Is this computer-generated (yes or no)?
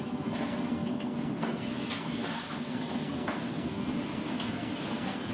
yes